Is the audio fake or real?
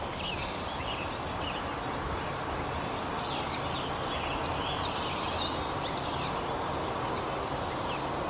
real